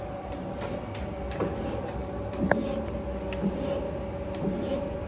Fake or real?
real